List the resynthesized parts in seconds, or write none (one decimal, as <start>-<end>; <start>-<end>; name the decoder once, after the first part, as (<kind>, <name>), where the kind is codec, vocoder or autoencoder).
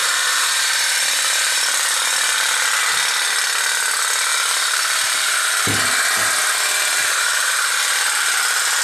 0.0-2.8 (vocoder, BigVGAN v2); 4.3-5.5; 7.0-7.7